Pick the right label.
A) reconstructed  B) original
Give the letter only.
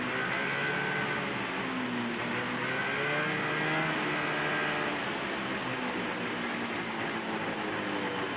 B